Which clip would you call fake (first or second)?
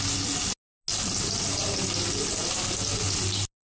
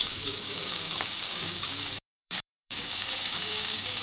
second